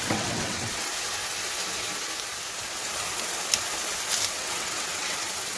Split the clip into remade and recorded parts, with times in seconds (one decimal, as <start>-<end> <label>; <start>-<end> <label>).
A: 0.0-0.9 remade; 0.9-4.3 recorded; 4.3-5.6 remade